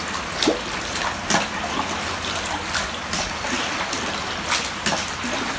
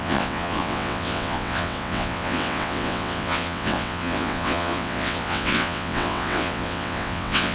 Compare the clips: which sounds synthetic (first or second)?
second